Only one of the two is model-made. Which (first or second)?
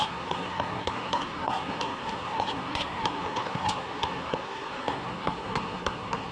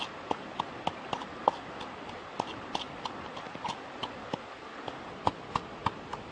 first